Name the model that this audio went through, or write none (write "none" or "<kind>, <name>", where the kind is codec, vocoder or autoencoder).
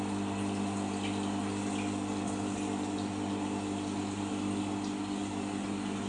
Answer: none